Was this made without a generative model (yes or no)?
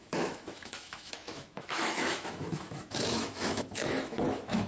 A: no